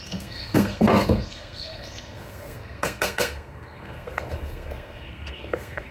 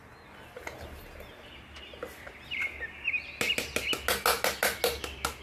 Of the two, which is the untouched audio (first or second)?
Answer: second